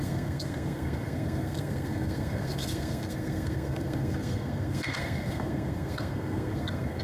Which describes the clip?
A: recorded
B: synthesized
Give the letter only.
B